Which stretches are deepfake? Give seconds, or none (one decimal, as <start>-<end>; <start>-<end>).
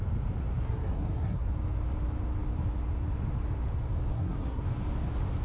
0.6-1.5; 4.1-4.6